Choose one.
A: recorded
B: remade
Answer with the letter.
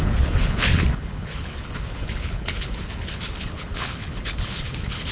B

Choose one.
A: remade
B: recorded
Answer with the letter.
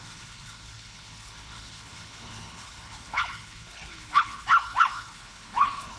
A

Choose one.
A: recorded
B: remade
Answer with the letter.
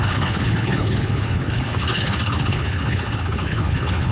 B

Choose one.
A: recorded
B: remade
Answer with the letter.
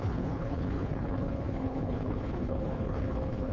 B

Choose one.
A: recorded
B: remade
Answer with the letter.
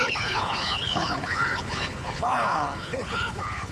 B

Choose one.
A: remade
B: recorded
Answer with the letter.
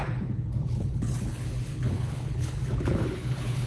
A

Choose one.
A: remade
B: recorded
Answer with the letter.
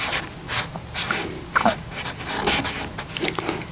B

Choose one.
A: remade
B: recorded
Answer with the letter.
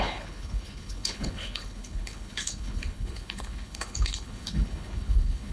A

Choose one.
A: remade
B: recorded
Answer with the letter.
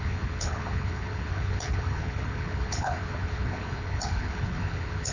A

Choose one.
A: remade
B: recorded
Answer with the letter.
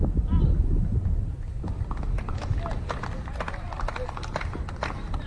B